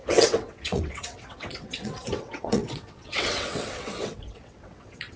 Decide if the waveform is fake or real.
fake